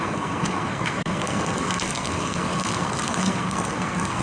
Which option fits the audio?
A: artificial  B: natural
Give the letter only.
A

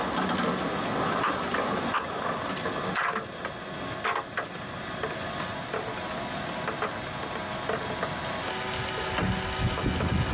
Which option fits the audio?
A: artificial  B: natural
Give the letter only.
B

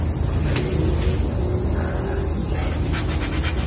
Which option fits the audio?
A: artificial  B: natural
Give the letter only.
B